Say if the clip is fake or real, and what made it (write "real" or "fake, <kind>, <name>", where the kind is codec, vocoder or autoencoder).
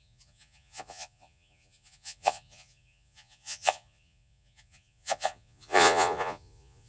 fake, vocoder, Vocos